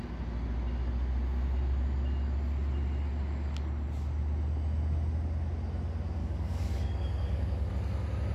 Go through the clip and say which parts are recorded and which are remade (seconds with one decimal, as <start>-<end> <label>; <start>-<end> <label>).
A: 0.0-6.2 recorded; 6.2-7.7 remade; 7.7-8.3 recorded